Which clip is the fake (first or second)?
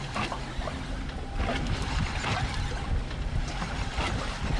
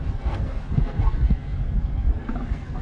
second